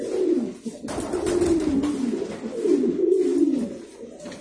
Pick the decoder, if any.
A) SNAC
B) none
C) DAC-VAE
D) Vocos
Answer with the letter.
B